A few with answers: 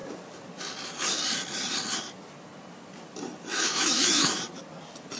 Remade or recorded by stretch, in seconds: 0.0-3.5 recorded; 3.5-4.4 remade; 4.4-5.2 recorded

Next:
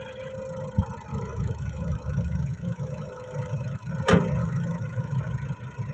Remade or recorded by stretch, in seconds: 0.0-1.1 recorded; 1.1-3.9 remade; 3.9-4.4 recorded; 4.4-5.2 remade; 5.2-5.9 recorded

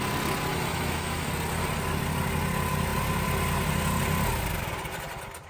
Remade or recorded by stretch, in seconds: 0.0-0.5 recorded; 0.5-1.3 remade; 1.3-5.5 recorded

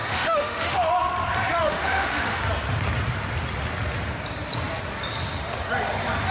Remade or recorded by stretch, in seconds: 0.0-0.9 remade; 0.9-1.6 recorded; 1.6-2.4 remade; 2.4-6.3 recorded

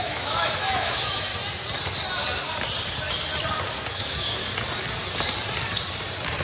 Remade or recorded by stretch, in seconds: 0.0-1.3 remade; 1.3-3.9 recorded; 3.9-4.4 remade; 4.4-6.4 recorded